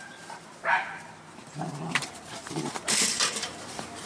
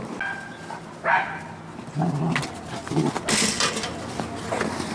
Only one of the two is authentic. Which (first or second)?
second